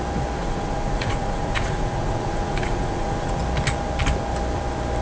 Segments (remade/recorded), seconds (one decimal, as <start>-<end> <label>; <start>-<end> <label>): 0.0-0.4 recorded; 0.4-3.4 remade; 3.4-5.0 recorded